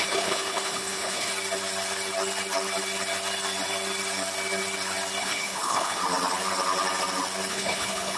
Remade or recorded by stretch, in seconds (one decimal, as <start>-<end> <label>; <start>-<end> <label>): 0.0-1.3 remade; 1.3-5.2 recorded; 5.2-6.0 remade; 6.0-7.5 recorded; 7.5-8.2 remade